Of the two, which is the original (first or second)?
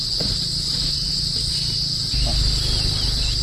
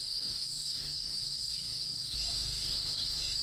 first